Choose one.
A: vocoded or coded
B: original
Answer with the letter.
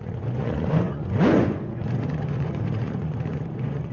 A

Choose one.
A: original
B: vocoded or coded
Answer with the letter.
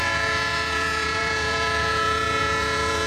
B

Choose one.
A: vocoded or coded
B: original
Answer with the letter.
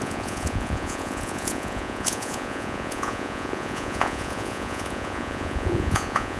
A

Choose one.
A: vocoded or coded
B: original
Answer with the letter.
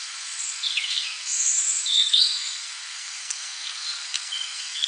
A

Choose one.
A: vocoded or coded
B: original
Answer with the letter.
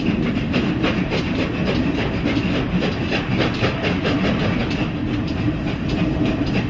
B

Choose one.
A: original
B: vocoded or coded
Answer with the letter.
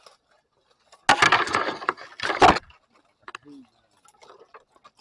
A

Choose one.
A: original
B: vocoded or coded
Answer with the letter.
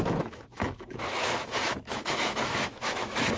B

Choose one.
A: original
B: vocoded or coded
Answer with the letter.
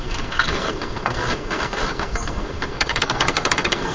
B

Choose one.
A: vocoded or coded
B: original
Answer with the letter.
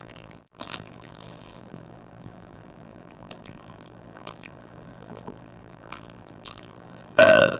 A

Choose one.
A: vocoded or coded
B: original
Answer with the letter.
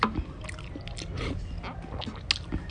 B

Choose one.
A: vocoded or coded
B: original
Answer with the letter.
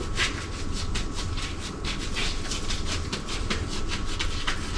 B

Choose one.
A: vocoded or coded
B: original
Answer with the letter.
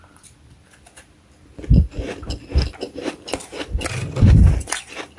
B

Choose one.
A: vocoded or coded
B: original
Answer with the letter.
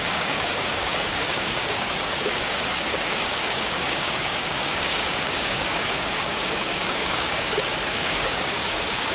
A